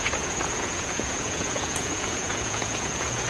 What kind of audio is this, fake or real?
fake